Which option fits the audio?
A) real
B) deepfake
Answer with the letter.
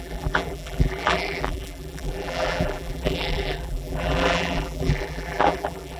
B